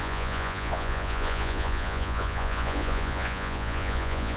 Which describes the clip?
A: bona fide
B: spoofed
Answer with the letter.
B